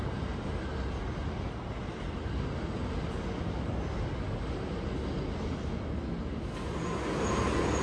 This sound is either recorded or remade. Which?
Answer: recorded